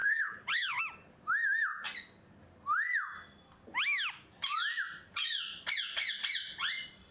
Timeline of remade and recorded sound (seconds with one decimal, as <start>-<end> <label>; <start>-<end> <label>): 0.0-0.8 remade; 0.8-7.1 recorded